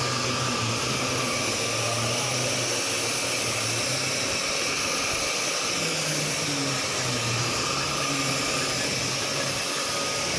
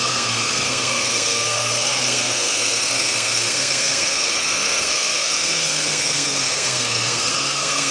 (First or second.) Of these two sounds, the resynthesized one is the second